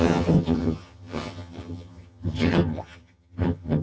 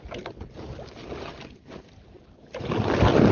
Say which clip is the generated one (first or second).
first